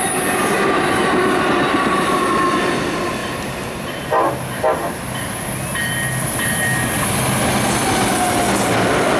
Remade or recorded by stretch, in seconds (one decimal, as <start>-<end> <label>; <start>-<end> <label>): 0.0-1.0 recorded; 1.0-2.2 remade; 2.2-9.2 recorded